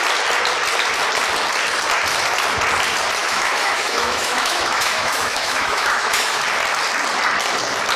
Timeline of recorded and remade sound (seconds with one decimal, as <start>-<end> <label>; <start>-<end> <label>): 0.0-3.2 recorded; 3.2-6.4 remade; 6.4-8.0 recorded

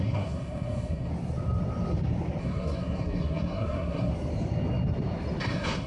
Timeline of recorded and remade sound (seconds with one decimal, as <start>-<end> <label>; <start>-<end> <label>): 0.0-1.1 remade; 1.1-2.4 recorded; 2.4-4.1 remade; 4.1-5.4 recorded; 5.4-5.9 remade

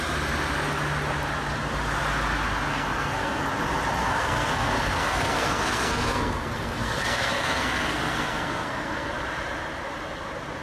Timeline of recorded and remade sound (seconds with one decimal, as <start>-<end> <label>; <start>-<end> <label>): 0.0-2.7 recorded; 2.7-3.4 remade; 3.4-4.0 recorded; 4.0-9.1 remade; 9.1-10.6 recorded

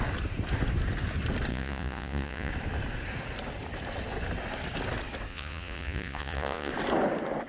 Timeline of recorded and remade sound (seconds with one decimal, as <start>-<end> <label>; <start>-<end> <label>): 0.0-1.5 recorded; 1.5-2.5 remade; 2.5-5.3 recorded; 5.3-6.7 remade; 6.7-7.5 recorded

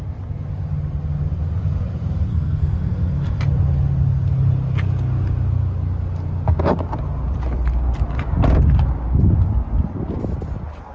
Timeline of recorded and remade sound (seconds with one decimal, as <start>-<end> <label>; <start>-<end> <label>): 0.0-2.3 recorded; 2.3-3.4 remade; 3.4-10.9 recorded

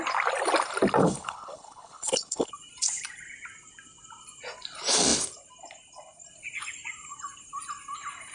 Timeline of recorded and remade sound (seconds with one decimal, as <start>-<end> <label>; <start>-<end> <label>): 0.0-1.0 recorded; 1.0-2.5 remade; 2.5-8.3 recorded

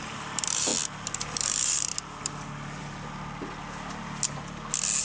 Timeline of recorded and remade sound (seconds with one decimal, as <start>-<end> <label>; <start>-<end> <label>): 0.0-0.7 remade; 0.7-1.3 recorded; 1.3-1.9 remade; 1.9-5.0 recorded

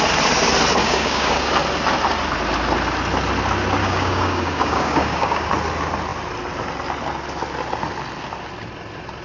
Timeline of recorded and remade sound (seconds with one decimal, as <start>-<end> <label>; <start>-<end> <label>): 0.0-0.8 recorded; 0.8-1.5 remade; 1.5-3.8 recorded; 3.8-5.5 remade; 5.5-9.2 recorded